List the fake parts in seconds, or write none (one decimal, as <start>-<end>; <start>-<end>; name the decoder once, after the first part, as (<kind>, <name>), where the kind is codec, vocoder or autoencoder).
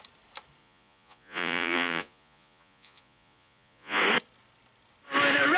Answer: 0.6-4.0 (vocoder, Vocos)